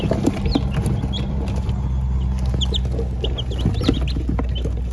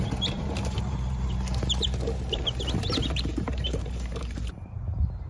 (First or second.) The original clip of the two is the first